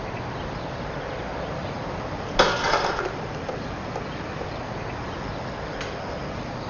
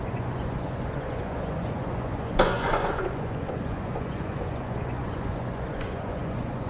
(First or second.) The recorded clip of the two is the first